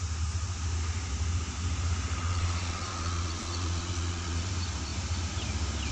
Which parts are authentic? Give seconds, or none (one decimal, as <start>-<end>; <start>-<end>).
0.0-2.2; 4.5-5.9